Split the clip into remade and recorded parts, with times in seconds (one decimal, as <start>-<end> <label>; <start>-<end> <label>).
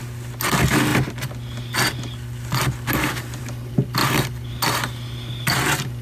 0.0-6.0 recorded